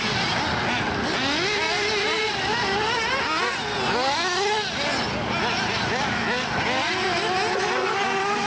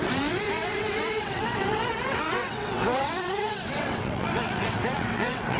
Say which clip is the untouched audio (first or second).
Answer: first